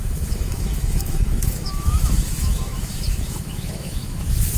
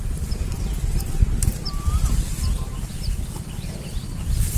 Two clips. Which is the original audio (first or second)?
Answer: second